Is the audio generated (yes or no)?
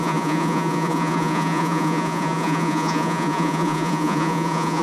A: yes